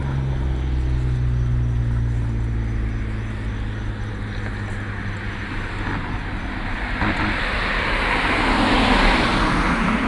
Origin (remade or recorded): recorded